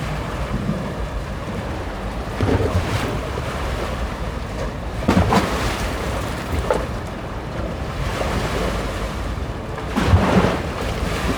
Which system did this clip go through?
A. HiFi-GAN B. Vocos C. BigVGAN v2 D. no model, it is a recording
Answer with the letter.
C